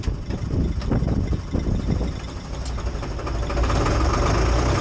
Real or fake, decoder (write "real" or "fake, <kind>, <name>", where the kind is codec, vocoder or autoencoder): real